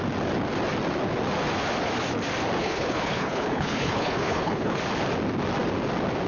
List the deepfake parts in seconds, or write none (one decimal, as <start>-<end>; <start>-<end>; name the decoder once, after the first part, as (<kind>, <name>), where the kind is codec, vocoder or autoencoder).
2.6-4.8 (codec, HILCodec)

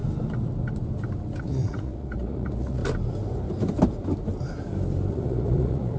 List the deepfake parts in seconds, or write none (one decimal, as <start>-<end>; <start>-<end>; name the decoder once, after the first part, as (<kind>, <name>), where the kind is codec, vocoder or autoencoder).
1.4-2.8 (vocoder, Vocos); 5.1-6.0

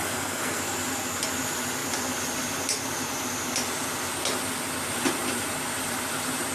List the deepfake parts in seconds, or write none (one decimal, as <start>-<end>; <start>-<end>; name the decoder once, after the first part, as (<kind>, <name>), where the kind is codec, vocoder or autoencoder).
0.0-0.6 (codec, SNAC)

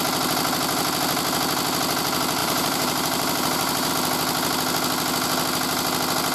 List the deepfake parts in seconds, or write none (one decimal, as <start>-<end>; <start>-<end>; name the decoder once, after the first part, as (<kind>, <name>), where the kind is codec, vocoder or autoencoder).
2.4-3.9 (vocoder, BigVGAN v2)

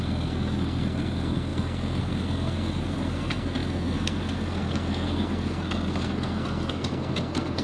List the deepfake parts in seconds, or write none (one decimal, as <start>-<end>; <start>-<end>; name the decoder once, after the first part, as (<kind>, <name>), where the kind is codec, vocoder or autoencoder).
0.0-7.6 (codec, SNAC)